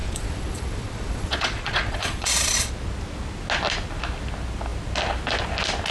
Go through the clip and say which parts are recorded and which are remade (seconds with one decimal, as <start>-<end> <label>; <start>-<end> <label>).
0.0-2.7 remade; 2.7-5.9 recorded